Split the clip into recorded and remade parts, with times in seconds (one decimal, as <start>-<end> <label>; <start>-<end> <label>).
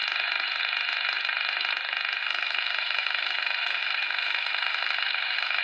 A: 0.0-2.2 recorded; 2.2-5.6 remade